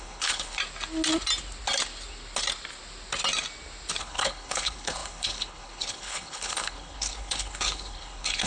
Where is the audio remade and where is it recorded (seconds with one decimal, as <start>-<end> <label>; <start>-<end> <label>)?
0.0-0.6 remade; 0.6-4.0 recorded; 4.0-8.5 remade